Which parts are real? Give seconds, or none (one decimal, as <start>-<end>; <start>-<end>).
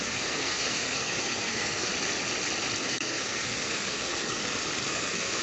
1.9-2.8; 4.4-4.9